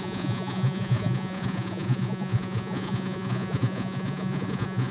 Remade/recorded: remade